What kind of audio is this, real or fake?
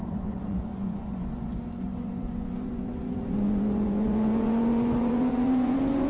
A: fake